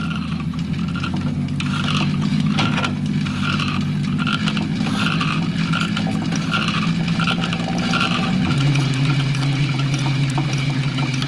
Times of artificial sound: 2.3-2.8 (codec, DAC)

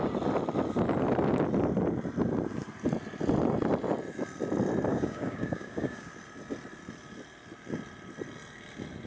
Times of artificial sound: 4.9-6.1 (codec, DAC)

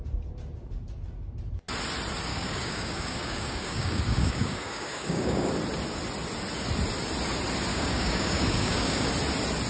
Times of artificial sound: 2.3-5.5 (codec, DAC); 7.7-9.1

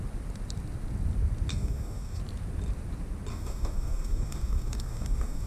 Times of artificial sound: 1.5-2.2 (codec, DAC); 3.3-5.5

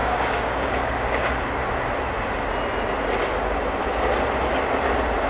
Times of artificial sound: 0.0-1.3 (codec, DAC)

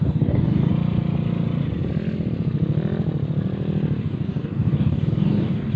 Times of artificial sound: 0.0-0.7 (codec, DAC); 4.0-5.8

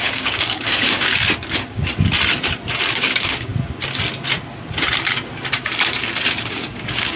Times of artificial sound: 0.0-1.2 (codec, DAC); 2.9-3.5; 6.4-7.2

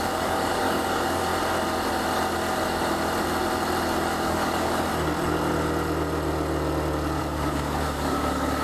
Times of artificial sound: 0.0-1.3 (codec, DAC); 4.2-4.9; 7.2-8.6